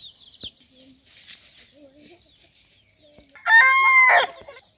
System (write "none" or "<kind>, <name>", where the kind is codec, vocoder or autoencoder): none